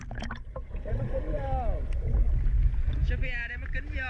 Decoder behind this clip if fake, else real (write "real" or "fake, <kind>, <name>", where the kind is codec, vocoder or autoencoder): real